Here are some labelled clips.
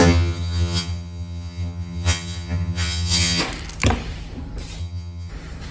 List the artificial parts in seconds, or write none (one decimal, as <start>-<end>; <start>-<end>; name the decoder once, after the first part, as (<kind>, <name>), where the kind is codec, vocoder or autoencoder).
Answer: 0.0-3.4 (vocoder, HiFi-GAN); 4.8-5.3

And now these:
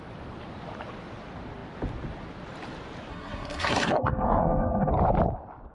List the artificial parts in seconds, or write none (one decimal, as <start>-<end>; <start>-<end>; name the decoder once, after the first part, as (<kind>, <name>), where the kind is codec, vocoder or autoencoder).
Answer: 3.1-4.9 (codec, SNAC)

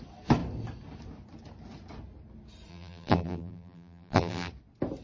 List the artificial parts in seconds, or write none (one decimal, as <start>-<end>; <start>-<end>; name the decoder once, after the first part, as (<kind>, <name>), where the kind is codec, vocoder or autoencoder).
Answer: 2.7-4.5 (vocoder, BigVGAN v2)

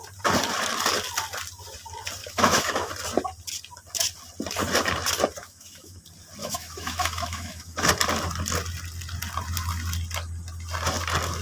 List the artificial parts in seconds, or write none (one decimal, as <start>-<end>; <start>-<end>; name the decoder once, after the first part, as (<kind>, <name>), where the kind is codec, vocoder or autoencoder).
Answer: 2.2-2.9 (autoencoder, DAC-VAE); 5.4-6.0; 6.4-7.9

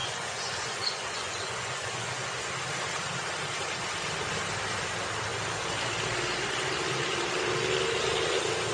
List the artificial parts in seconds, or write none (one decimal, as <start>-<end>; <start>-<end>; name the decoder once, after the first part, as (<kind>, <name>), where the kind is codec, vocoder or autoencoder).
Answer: 0.0-2.5 (vocoder, Vocos)

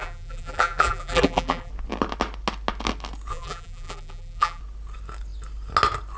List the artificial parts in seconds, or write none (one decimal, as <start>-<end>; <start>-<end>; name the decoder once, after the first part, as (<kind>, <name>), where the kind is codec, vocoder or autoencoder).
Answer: 0.0-1.7 (vocoder, BigVGAN v2); 3.3-4.6